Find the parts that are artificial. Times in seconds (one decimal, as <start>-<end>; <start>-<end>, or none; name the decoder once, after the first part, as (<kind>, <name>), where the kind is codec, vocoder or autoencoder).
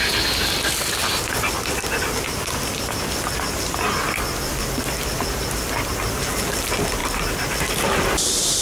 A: none